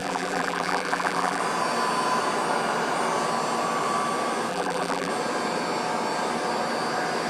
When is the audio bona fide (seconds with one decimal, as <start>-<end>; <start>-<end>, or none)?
1.4-4.5; 5.1-7.3